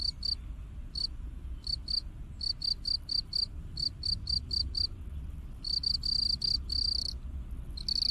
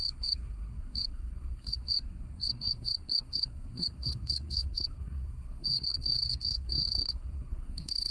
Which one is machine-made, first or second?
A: second